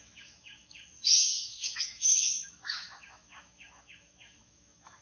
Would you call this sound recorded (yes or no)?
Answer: no